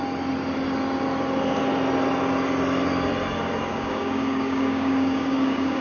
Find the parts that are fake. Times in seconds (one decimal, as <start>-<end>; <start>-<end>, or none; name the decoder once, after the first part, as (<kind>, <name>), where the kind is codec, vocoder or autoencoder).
3.7-5.8 (codec, DAC)